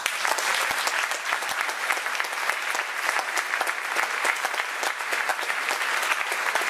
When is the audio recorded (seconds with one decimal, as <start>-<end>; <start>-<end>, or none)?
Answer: 0.0-5.3; 5.9-6.7